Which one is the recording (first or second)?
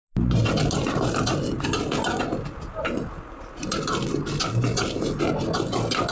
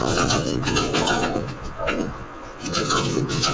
first